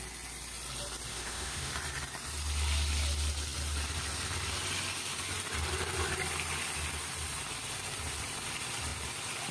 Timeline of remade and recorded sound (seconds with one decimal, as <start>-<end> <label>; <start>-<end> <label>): 0.0-1.1 recorded; 1.1-1.7 remade; 1.7-9.5 recorded